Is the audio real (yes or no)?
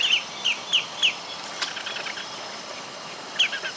yes